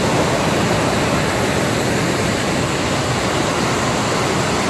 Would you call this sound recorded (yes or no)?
yes